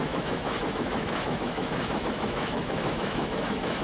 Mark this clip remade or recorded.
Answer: remade